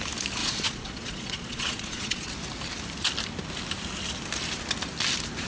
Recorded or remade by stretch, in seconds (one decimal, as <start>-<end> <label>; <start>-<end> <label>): 0.0-0.4 recorded; 0.4-2.3 remade; 2.3-5.5 recorded